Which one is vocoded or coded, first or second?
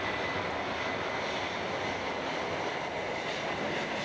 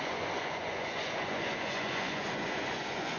second